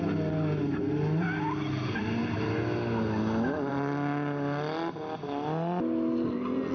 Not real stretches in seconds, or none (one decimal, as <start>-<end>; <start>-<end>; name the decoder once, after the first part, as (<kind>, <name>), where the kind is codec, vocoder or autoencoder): none